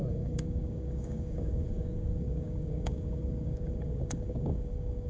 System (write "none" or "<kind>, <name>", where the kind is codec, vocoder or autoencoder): codec, DAC